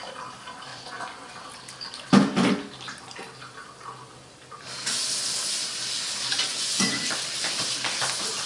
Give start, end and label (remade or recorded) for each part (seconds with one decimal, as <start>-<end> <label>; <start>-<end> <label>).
0.0-0.7 recorded; 0.7-1.4 remade; 1.4-6.5 recorded; 6.5-7.1 remade; 7.1-8.5 recorded